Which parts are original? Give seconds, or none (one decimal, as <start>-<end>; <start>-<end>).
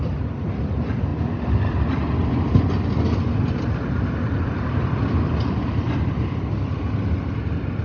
0.0-7.8